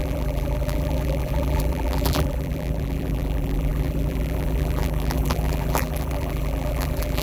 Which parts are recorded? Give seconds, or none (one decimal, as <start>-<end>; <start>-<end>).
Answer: none